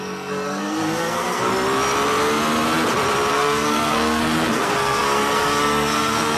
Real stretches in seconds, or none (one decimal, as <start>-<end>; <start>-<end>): 1.5-3.3